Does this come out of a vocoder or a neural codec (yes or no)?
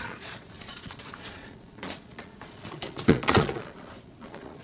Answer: yes